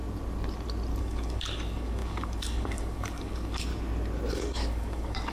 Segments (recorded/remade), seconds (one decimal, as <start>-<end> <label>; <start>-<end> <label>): 0.0-1.0 recorded; 1.0-3.7 remade; 3.7-4.3 recorded; 4.3-5.3 remade

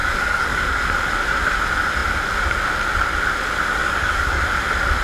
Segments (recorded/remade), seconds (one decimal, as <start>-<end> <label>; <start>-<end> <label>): 0.0-0.8 remade; 0.8-3.8 recorded; 3.8-4.4 remade; 4.4-5.0 recorded

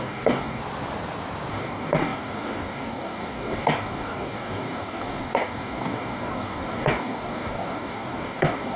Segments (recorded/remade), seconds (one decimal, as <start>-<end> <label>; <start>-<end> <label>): 0.0-0.6 remade; 0.6-1.5 recorded; 1.5-8.8 remade

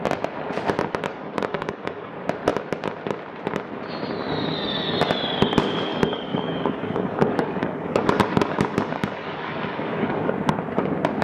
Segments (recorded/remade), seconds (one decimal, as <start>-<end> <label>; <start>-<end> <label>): 0.0-1.1 recorded; 1.1-2.1 remade; 2.1-5.9 recorded; 5.9-10.3 remade; 10.3-11.2 recorded

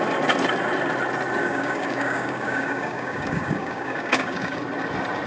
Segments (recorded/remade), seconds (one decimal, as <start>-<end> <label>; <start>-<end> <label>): 0.0-1.4 recorded; 1.4-4.6 remade; 4.6-5.3 recorded